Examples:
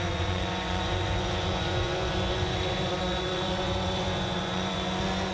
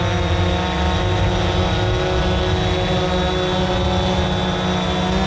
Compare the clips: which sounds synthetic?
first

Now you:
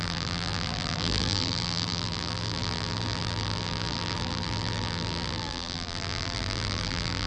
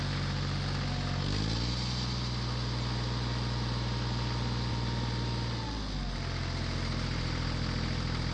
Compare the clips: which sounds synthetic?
first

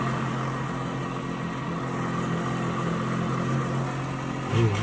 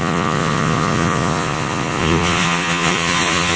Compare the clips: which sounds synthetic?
second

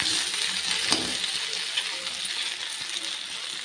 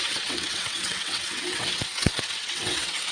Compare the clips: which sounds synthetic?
second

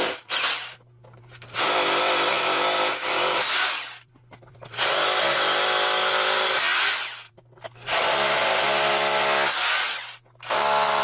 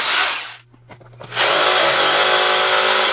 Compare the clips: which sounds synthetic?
first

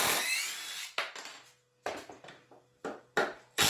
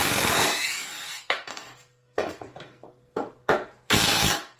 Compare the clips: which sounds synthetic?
second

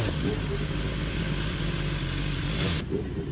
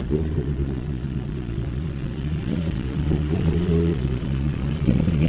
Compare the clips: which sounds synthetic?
second